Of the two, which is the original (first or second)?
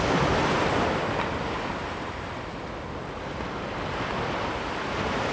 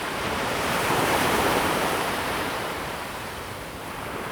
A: first